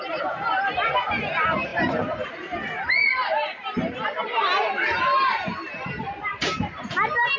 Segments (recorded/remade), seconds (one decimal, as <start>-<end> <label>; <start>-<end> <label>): 0.0-7.4 remade